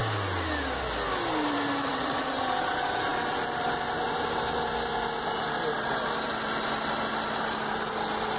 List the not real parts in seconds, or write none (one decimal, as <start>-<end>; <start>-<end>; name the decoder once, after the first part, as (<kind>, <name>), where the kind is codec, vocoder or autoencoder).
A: 1.8-2.4 (vocoder, WaveNeXt)

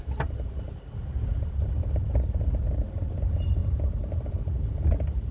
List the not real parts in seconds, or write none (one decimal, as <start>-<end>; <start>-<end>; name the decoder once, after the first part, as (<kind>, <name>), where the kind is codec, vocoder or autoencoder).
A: none